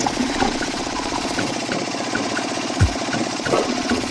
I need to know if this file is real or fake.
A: fake